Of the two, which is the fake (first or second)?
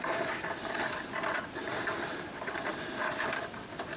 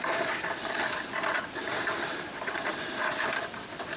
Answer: second